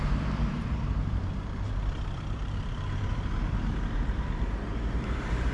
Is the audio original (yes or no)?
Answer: no